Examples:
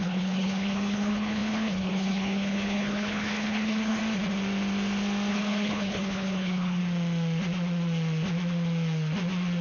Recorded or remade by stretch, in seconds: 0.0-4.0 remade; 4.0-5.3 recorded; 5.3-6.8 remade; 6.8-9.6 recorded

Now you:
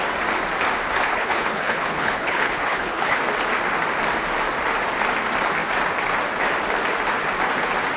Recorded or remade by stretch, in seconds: 0.0-1.1 recorded; 1.1-3.2 remade; 3.2-8.0 recorded

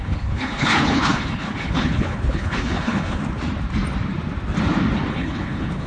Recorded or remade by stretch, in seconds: 0.0-3.2 remade; 3.2-5.1 recorded; 5.1-5.9 remade

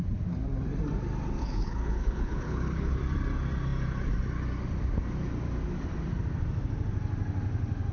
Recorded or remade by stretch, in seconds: 0.0-1.4 recorded; 1.4-3.0 remade; 3.0-7.9 recorded

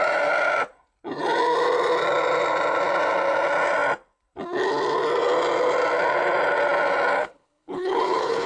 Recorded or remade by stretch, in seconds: 0.0-7.2 recorded; 7.2-8.5 remade